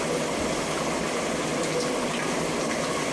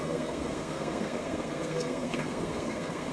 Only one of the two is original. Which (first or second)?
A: first